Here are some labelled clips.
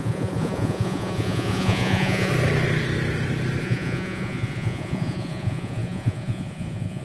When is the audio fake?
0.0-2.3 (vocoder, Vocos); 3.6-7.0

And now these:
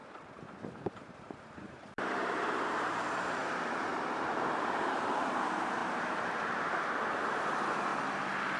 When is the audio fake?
0.0-7.9 (vocoder, BigVGAN v2)

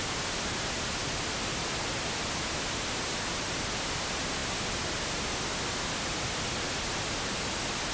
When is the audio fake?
none